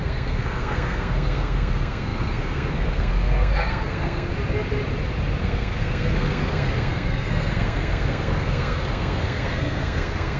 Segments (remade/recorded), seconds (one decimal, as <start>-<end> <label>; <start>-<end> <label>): 0.0-4.3 remade; 4.3-5.4 recorded; 5.4-10.4 remade